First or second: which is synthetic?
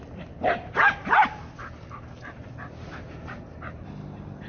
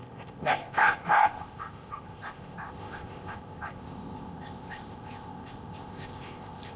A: second